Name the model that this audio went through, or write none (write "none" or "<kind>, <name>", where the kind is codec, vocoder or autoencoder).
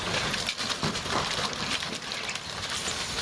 none